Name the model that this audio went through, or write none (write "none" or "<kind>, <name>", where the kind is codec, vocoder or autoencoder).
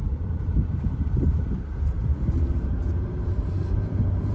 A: vocoder, BigVGAN v2